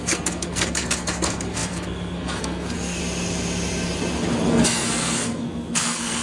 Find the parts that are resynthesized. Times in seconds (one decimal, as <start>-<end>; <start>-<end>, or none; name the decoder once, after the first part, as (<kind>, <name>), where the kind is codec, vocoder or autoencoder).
0.0-3.0 (codec, SNAC); 4.5-6.2